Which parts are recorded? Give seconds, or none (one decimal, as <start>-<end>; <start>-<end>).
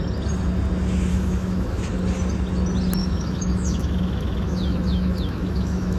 0.0-1.1; 1.8-3.0